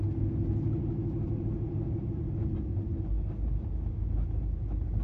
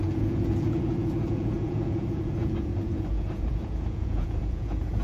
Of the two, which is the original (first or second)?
first